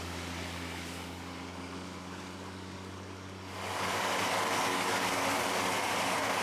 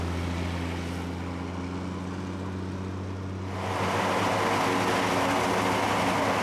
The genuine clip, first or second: second